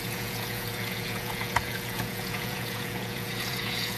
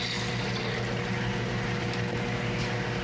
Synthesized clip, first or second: first